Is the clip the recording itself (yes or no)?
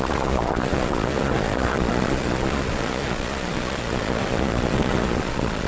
no